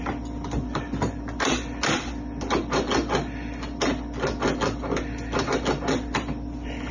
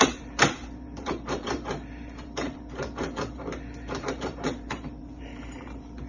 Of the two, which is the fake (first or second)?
second